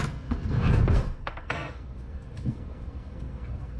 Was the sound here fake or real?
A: fake